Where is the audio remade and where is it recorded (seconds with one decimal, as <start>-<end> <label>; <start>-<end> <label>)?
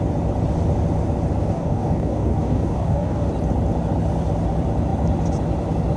0.0-1.4 recorded; 1.4-3.3 remade; 3.3-6.0 recorded